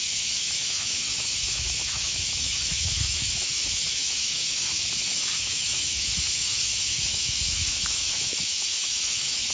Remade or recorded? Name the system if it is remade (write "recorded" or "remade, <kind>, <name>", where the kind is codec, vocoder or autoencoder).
remade, autoencoder, DAC-VAE